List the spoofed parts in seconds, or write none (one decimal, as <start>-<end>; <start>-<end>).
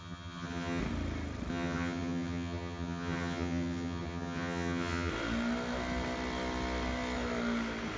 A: 0.0-0.8; 1.5-5.1